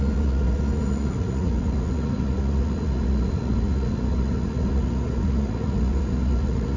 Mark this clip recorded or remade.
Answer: remade